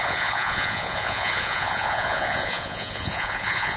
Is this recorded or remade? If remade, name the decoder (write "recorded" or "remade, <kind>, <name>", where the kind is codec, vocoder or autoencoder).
remade, vocoder, Vocos